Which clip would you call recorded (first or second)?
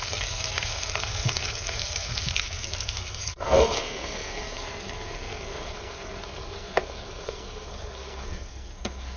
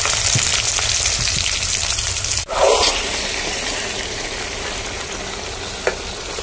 second